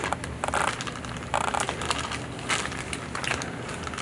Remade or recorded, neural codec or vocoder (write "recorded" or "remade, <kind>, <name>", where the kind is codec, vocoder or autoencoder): recorded